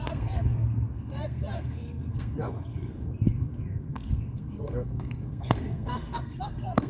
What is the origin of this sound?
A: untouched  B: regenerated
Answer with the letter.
B